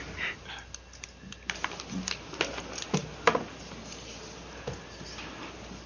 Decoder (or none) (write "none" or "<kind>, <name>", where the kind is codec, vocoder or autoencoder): none